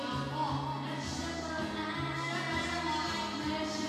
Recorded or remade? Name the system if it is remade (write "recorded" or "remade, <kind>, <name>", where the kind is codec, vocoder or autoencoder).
recorded